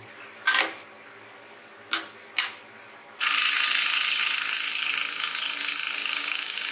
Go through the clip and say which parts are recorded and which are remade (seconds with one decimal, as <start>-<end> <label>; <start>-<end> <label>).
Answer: 0.0-6.0 recorded; 6.0-6.7 remade